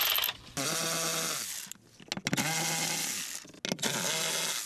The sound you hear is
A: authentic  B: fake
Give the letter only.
A